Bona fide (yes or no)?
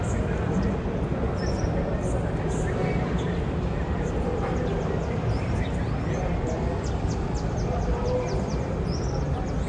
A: yes